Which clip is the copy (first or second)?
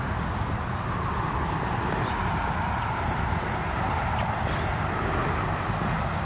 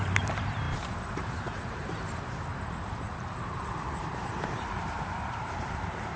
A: second